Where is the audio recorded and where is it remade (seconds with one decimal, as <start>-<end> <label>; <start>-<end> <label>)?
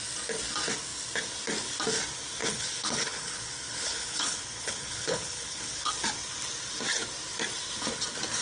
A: 0.0-2.4 recorded; 2.4-5.9 remade; 5.9-8.4 recorded